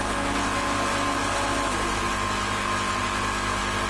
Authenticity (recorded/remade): recorded